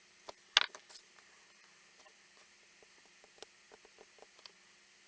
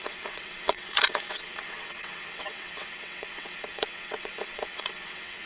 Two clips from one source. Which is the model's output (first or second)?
second